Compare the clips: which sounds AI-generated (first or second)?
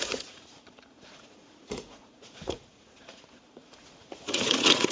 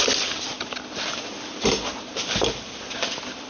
first